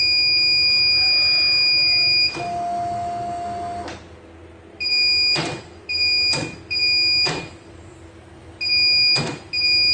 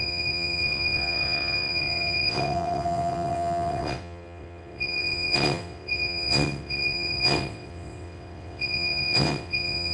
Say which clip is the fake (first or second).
second